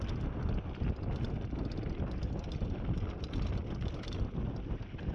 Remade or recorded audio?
recorded